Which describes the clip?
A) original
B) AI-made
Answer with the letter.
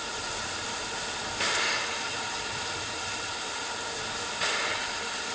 A